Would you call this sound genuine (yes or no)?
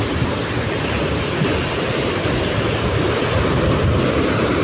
yes